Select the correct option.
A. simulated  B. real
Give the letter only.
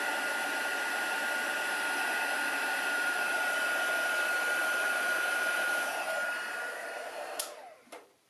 A